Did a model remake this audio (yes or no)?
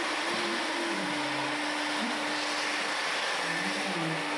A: no